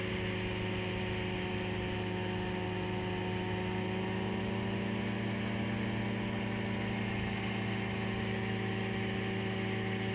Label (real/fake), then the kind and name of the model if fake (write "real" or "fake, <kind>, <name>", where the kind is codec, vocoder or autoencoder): real